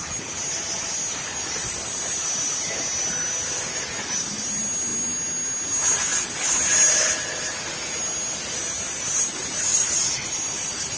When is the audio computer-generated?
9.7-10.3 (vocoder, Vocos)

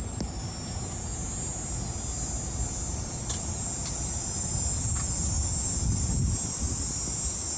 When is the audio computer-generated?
none